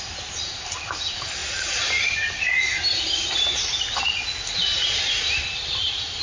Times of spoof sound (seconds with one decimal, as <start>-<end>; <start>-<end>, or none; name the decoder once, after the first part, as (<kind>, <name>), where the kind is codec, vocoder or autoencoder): none